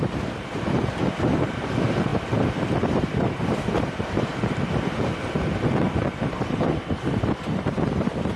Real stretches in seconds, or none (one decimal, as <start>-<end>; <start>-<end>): none